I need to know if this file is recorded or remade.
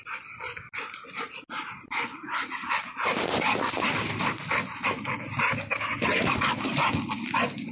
recorded